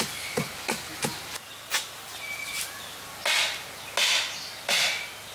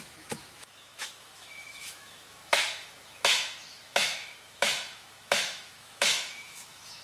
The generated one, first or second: second